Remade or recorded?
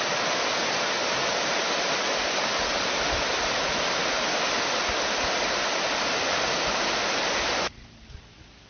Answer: recorded